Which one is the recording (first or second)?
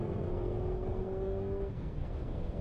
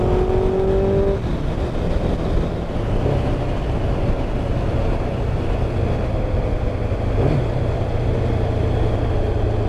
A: second